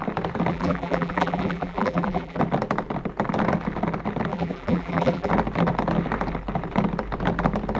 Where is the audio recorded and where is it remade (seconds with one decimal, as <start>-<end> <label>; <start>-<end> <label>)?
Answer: 0.0-0.5 recorded; 0.5-2.4 remade; 2.4-4.3 recorded; 4.3-5.3 remade; 5.3-7.8 recorded